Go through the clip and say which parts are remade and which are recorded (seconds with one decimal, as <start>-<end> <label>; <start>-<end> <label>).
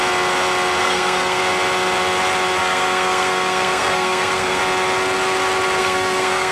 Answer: 0.0-0.8 recorded; 0.8-1.4 remade; 1.4-2.6 recorded; 2.6-4.6 remade; 4.6-5.8 recorded; 5.8-6.5 remade